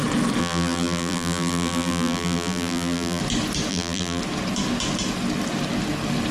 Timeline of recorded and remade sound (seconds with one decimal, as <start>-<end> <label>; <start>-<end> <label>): 0.0-0.4 recorded; 0.4-3.2 remade; 3.2-3.7 recorded; 3.7-4.2 remade; 4.2-6.3 recorded